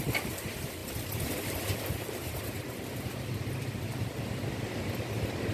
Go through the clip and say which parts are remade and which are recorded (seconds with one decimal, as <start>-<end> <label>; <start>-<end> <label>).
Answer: 0.0-0.8 recorded; 0.8-2.5 remade; 2.5-5.5 recorded